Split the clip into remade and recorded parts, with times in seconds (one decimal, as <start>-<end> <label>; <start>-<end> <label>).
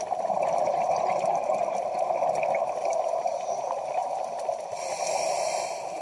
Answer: 0.0-6.0 recorded